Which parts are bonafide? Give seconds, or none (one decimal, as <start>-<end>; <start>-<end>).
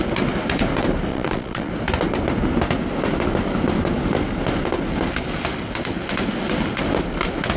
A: 0.0-1.1; 1.7-7.6